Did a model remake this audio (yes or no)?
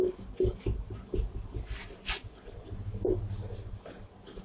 no